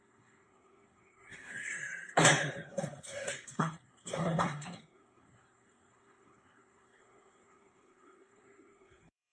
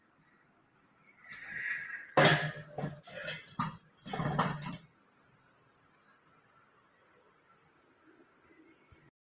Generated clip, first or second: first